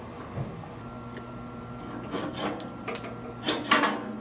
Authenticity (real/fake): real